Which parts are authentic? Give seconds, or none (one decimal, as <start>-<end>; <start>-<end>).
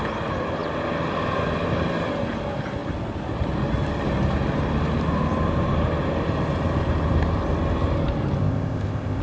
0.0-8.4